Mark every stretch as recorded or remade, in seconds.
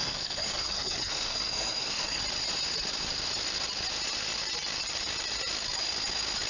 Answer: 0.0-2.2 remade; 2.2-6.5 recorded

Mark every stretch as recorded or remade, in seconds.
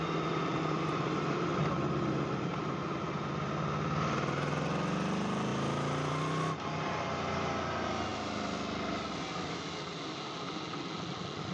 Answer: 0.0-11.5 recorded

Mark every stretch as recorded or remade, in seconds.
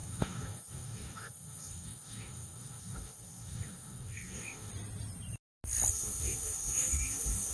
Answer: 0.0-4.7 remade; 4.7-5.9 recorded; 5.9-7.5 remade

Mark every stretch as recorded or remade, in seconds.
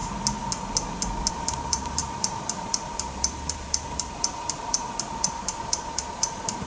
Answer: 0.0-1.3 recorded; 1.3-6.7 remade